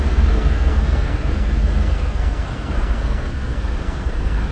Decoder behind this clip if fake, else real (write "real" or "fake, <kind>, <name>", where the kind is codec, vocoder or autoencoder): fake, codec, SNAC